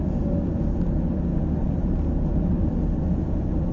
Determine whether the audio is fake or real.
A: real